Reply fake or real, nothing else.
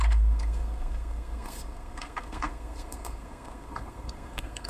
fake